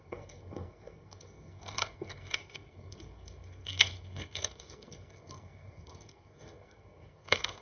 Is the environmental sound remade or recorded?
remade